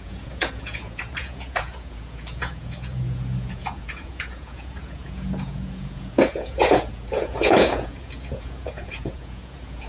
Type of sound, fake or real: fake